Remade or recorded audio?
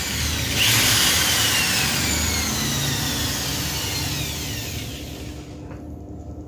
recorded